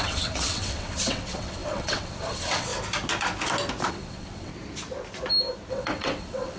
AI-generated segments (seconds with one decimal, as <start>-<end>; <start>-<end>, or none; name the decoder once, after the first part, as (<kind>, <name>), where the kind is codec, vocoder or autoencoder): 0.0-2.7 (vocoder, WaveNeXt); 3.9-4.5; 5.7-6.6